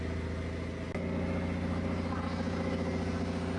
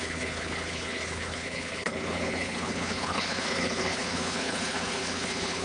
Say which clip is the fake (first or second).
second